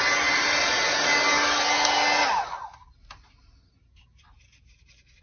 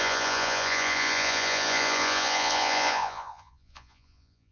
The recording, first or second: first